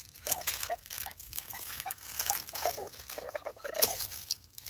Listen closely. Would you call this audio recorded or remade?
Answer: remade